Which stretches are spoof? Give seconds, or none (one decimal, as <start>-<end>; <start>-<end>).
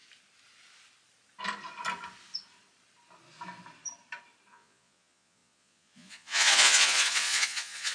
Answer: 4.5-7.9